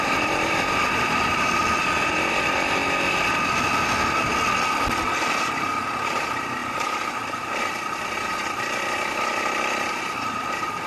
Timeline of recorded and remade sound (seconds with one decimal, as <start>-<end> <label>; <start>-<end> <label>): 0.0-2.8 remade; 2.8-5.4 recorded; 5.4-10.9 remade